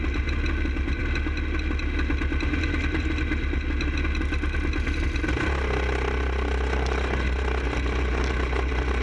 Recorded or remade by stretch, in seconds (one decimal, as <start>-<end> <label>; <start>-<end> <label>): 0.0-9.0 recorded